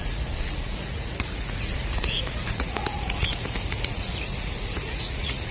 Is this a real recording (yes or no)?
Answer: no